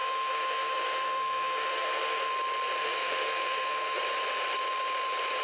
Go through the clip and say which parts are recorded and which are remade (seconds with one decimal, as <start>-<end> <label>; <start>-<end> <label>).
0.0-2.3 remade; 2.3-2.8 recorded; 2.8-4.0 remade; 4.0-5.4 recorded